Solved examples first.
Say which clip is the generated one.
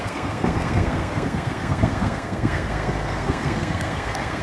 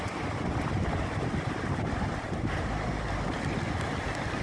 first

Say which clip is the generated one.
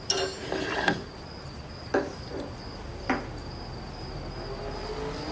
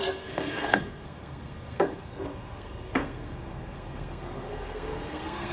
second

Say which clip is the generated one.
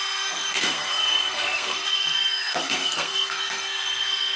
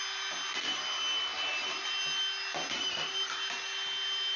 first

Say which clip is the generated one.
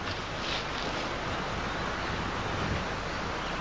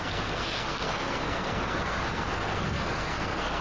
second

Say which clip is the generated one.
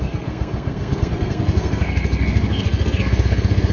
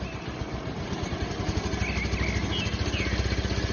first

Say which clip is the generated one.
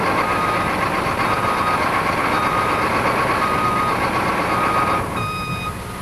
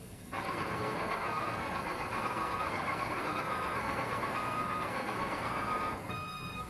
second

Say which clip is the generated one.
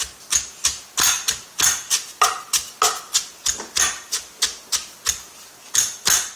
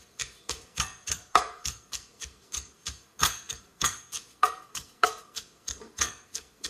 second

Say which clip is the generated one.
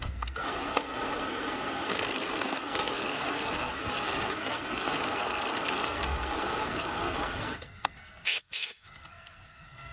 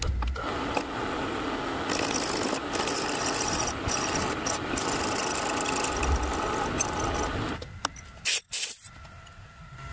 first